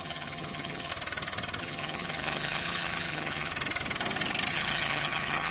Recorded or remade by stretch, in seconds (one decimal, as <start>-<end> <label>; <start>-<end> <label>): 0.0-0.9 remade; 0.9-1.6 recorded; 1.6-3.5 remade; 3.5-4.5 recorded; 4.5-5.5 remade